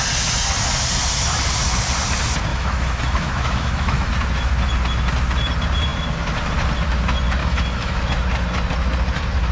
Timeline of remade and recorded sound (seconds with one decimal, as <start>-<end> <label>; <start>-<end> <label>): 0.0-2.5 recorded; 2.5-4.1 remade; 4.1-7.4 recorded; 7.4-8.0 remade; 8.0-9.5 recorded